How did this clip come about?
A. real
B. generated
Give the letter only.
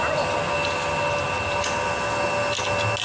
A